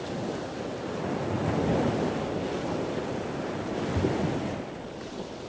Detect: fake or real real